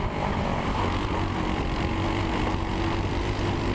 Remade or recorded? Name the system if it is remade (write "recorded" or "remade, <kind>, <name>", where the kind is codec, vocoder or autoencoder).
recorded